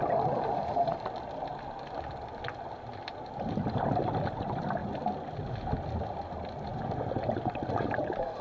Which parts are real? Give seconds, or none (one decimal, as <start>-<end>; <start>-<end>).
0.0-8.4